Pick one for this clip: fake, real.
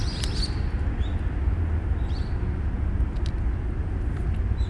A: real